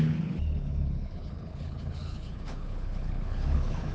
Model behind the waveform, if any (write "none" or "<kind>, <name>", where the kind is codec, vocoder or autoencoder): codec, HILCodec